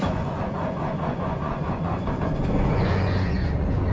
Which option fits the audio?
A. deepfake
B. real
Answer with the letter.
A